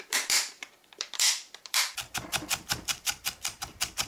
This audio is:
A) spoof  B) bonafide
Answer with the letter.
A